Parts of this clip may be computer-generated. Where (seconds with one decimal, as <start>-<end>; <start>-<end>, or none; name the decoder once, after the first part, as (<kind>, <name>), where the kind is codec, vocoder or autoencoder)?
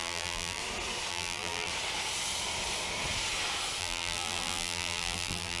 0.0-0.6 (vocoder, BigVGAN v2); 1.1-1.7; 3.8-5.6